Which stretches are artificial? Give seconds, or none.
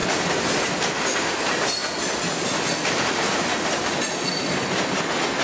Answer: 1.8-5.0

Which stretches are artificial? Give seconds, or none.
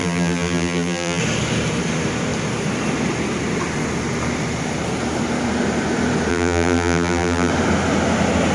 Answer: 0.0-1.2; 6.3-7.5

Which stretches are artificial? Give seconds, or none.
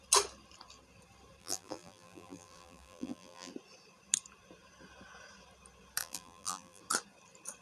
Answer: 1.4-3.5; 6.0-6.8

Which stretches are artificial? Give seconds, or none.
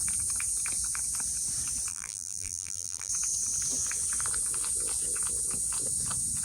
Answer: 1.9-3.1